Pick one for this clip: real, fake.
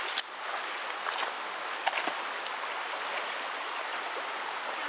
real